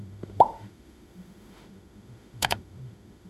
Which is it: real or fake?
fake